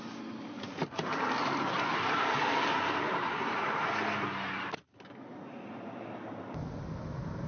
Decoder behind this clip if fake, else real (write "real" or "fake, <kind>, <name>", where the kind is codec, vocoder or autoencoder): real